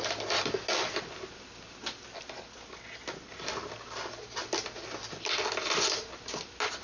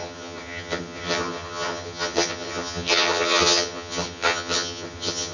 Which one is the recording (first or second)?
first